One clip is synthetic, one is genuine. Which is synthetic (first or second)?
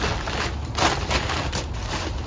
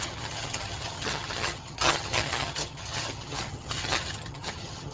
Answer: second